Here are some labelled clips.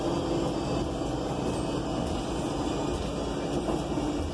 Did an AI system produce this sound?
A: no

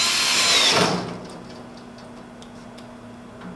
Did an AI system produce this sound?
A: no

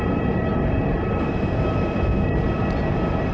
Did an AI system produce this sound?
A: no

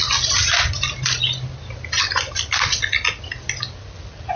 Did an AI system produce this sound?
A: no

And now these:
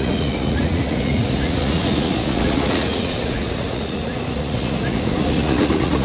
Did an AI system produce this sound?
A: yes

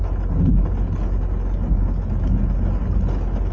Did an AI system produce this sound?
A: no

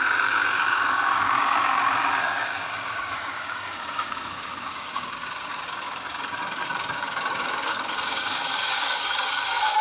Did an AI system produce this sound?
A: yes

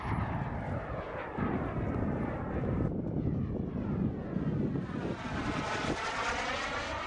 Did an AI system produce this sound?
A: no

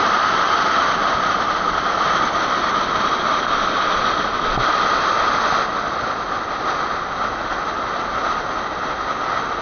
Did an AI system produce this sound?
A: no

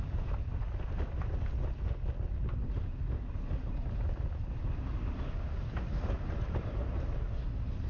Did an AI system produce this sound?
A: no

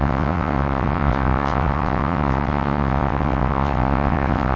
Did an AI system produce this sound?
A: yes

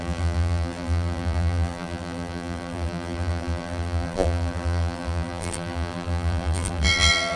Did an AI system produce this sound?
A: yes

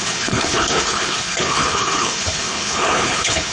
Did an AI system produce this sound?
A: yes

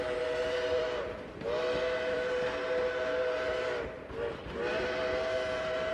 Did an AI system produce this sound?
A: no